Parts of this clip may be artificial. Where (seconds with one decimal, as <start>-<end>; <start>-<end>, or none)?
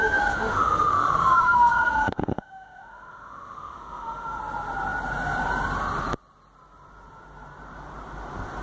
0.0-4.4